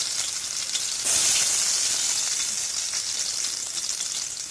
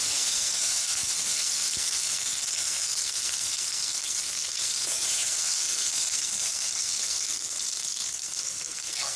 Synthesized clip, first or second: second